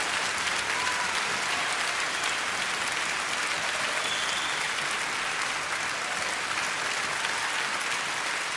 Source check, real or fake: real